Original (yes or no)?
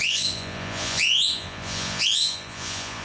no